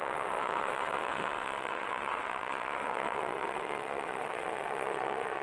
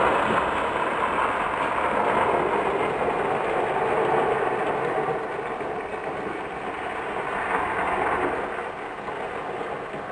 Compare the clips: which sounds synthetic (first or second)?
first